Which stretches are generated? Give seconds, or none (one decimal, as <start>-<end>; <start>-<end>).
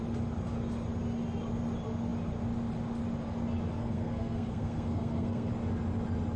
3.8-5.5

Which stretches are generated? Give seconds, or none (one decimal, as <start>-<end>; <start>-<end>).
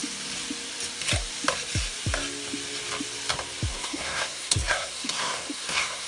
3.7-6.1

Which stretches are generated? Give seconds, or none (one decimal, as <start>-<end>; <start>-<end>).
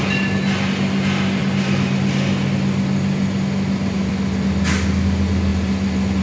none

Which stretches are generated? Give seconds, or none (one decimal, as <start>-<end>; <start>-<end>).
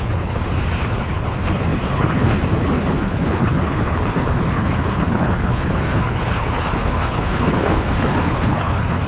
0.0-0.4; 0.9-9.1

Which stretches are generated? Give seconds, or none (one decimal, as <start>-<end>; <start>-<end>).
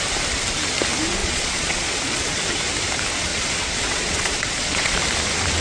1.2-2.4; 3.3-5.0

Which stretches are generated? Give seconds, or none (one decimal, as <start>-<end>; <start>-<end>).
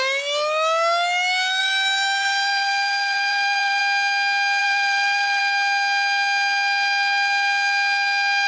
1.6-3.8; 4.6-5.4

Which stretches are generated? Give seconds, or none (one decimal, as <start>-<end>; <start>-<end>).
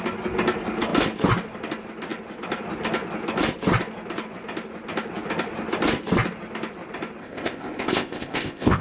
7.2-8.8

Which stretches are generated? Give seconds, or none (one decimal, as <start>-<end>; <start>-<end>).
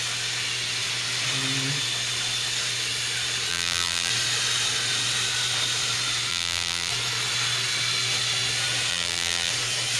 3.5-4.1; 6.3-6.9; 8.9-9.5